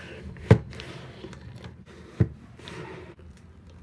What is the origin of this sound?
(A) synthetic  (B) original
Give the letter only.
B